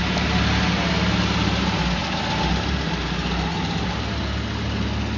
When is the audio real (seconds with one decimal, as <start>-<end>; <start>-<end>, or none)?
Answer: 0.0-5.2